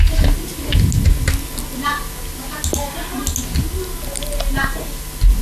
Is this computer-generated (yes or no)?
no